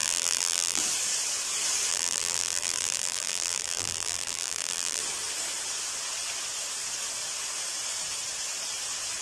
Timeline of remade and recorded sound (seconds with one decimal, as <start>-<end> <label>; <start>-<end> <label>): 0.0-0.8 remade; 0.8-1.9 recorded; 1.9-5.0 remade; 5.0-9.2 recorded